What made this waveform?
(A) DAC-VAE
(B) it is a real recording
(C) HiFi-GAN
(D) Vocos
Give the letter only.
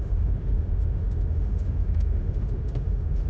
A